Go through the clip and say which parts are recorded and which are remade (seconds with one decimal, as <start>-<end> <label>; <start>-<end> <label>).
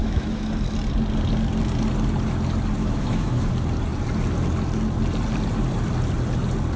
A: 0.0-0.5 remade; 0.5-2.8 recorded; 2.8-3.5 remade; 3.5-6.8 recorded